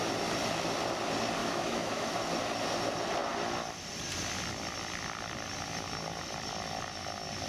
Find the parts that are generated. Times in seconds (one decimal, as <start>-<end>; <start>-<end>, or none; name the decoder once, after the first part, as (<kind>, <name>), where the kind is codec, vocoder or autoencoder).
1.4-2.1 (autoencoder, DAC-VAE)

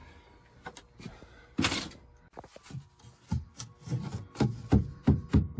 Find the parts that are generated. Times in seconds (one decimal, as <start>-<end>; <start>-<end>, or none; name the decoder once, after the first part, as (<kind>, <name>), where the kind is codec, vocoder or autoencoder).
none

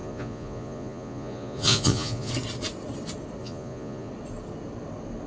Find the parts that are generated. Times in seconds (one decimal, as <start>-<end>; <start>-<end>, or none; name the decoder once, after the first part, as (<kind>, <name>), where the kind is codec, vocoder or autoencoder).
0.0-2.3 (vocoder, Vocos); 3.4-4.1

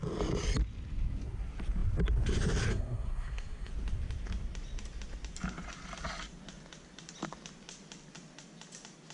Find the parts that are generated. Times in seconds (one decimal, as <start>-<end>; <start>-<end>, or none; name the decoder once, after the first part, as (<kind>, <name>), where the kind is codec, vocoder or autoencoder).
2.7-3.7 (codec, SNAC)

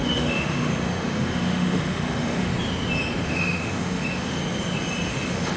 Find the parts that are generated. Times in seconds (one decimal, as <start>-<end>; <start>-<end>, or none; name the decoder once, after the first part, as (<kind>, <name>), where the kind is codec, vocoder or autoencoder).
0.0-2.5 (autoencoder, DAC-VAE); 3.2-4.4; 5.1-5.6